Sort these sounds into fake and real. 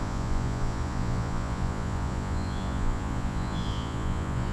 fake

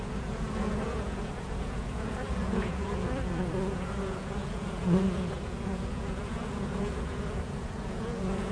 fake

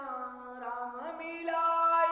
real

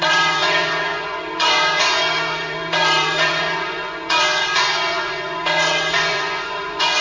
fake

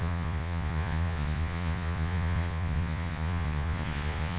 fake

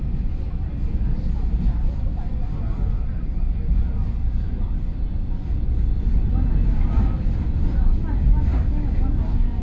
real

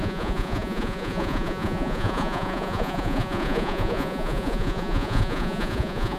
fake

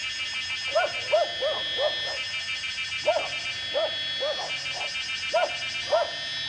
real